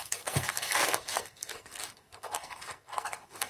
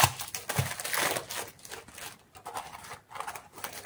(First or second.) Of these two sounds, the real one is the second